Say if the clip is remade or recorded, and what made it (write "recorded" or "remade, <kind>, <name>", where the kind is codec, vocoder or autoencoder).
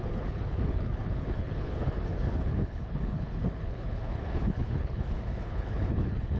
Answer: remade, codec, HILCodec